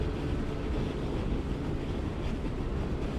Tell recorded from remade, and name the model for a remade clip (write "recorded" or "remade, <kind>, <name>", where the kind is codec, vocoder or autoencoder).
recorded